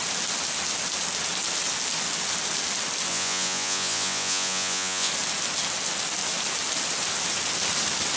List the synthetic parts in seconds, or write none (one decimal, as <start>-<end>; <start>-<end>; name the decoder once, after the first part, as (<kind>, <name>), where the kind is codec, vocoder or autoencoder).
3.1-5.1 (vocoder, Vocos)